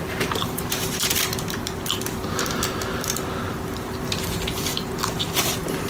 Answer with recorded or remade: recorded